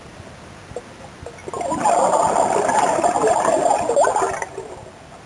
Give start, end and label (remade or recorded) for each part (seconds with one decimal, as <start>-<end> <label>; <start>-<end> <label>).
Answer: 0.0-5.3 recorded